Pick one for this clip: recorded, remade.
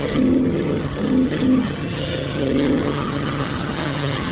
remade